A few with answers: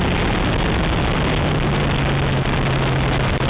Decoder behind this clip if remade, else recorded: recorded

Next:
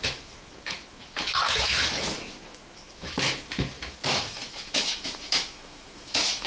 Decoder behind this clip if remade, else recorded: remade, autoencoder, DAC-VAE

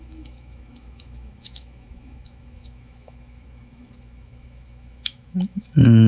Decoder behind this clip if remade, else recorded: remade, autoencoder, DAC-VAE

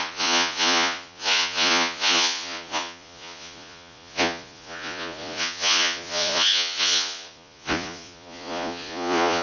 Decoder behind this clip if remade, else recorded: remade, vocoder, Vocos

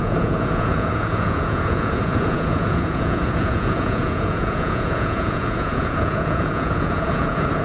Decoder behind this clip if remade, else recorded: remade, vocoder, Vocos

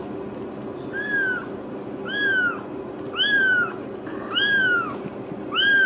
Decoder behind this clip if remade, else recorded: recorded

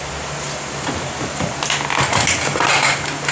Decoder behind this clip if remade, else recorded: recorded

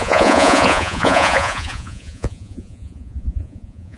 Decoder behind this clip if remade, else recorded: remade, vocoder, Vocos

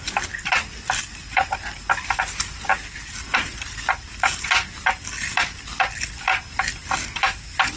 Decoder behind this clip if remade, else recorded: recorded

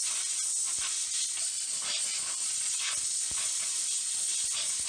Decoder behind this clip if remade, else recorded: recorded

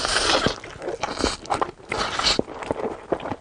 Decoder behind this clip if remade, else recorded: recorded